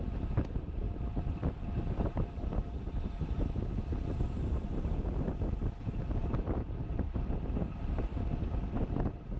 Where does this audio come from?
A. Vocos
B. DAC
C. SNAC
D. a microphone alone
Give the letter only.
D